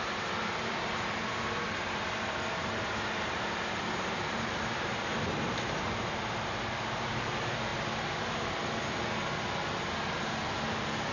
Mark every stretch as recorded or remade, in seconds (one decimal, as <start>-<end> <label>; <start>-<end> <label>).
0.0-7.7 remade; 7.7-11.1 recorded